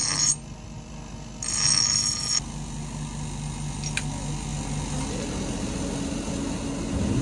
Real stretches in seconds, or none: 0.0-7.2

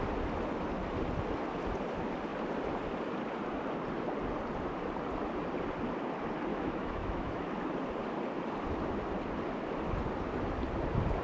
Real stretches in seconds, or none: 0.0-6.5; 7.5-11.2

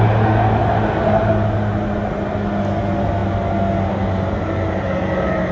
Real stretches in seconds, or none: 0.0-5.5

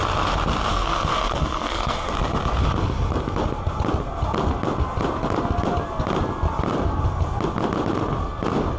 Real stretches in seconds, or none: 0.0-0.7; 2.1-8.8

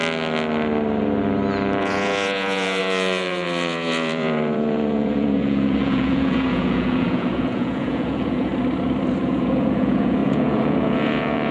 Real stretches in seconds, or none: 0.0-1.8; 8.5-9.2